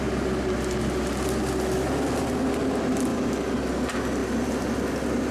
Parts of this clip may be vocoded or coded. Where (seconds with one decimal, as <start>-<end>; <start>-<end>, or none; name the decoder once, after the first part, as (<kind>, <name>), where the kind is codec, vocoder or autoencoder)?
3.1-3.6 (vocoder, BigVGAN v2)